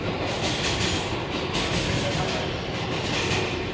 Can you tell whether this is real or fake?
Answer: real